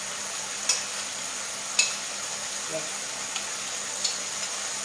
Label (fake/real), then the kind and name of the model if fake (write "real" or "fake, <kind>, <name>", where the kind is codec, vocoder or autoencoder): real